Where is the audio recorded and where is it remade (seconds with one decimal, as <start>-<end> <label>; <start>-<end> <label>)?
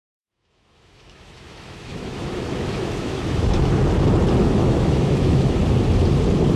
0.0-3.7 remade; 3.7-4.4 recorded; 4.4-5.6 remade; 5.6-6.6 recorded